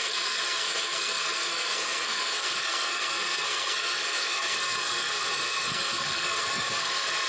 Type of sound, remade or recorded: remade